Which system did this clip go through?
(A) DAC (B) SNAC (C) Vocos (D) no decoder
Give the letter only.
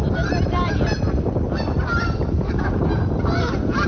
D